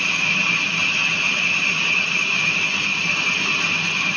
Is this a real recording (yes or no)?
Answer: yes